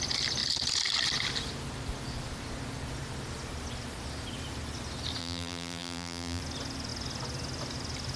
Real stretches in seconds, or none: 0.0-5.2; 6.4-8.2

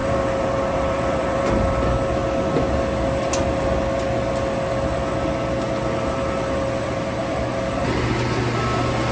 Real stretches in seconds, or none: 1.5-9.1

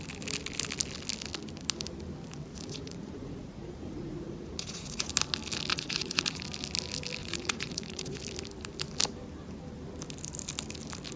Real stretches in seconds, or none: 0.0-2.5; 5.1-5.7; 6.4-7.2; 8.2-11.2

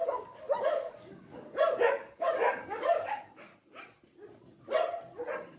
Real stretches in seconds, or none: 3.5-5.6

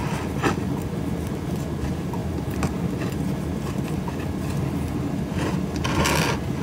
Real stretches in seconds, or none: 0.0-6.6

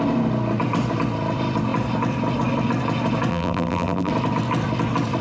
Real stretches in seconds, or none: 0.0-3.3; 4.1-5.2